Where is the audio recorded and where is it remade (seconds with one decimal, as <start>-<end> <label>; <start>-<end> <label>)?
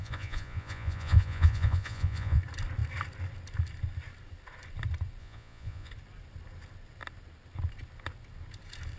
0.0-2.4 remade; 2.4-5.2 recorded; 5.2-5.9 remade; 5.9-9.0 recorded